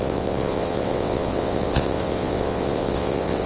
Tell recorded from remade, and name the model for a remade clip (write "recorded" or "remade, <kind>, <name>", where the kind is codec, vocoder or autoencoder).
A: remade, vocoder, WaveNeXt